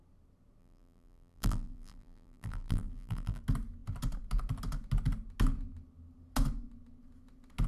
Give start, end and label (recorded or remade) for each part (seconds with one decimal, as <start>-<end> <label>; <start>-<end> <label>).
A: 0.0-0.6 recorded; 0.6-3.4 remade; 3.4-7.7 recorded